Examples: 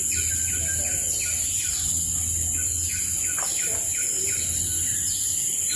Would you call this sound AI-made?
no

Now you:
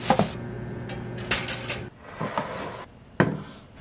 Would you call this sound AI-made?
no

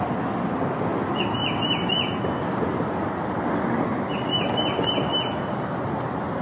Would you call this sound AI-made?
no